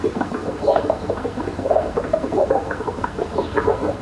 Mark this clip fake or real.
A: fake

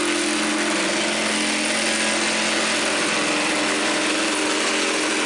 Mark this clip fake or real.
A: real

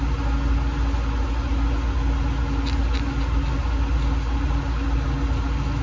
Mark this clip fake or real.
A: real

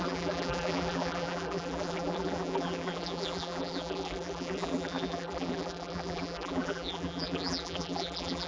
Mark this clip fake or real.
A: fake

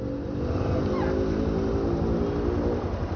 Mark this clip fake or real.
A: real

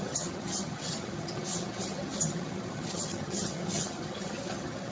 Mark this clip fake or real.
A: fake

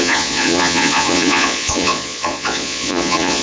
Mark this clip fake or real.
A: fake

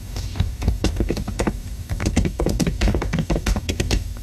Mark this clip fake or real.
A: fake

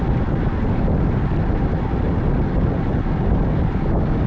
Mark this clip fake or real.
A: real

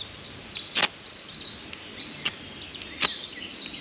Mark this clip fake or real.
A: real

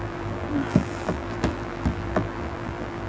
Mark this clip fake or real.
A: fake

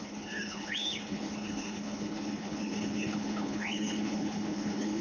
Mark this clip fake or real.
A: fake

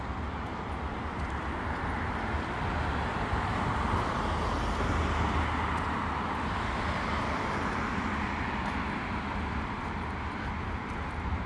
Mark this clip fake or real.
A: real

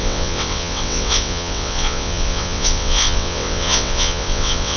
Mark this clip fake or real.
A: fake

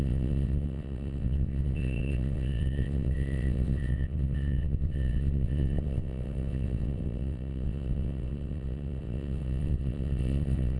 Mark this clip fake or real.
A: fake